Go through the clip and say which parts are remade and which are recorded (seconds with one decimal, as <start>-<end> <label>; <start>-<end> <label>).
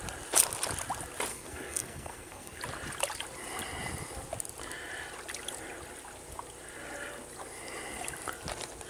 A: 0.0-1.3 recorded; 1.3-2.6 remade; 2.6-8.9 recorded